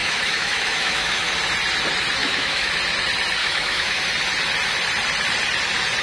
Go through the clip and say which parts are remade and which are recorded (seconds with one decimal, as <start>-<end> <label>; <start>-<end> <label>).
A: 0.0-1.3 remade; 1.3-2.2 recorded; 2.2-2.7 remade; 2.7-3.4 recorded; 3.4-4.0 remade; 4.0-6.0 recorded